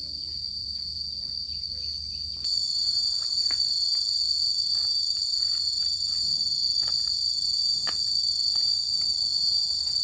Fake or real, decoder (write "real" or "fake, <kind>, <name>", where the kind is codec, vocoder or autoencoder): real